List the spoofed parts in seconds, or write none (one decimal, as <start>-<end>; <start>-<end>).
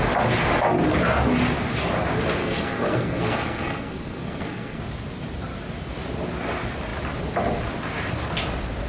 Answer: 2.4-4.8